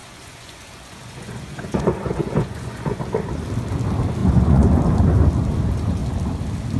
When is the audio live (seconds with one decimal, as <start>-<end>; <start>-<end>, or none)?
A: 3.0-4.2; 4.8-6.8